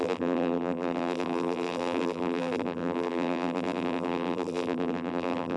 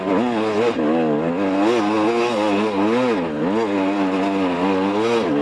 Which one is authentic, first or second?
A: second